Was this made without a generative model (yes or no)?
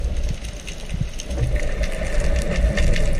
yes